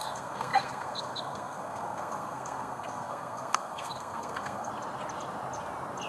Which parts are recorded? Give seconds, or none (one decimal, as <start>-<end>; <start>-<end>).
4.7-6.1